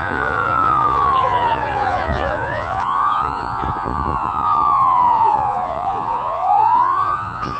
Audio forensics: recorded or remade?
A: remade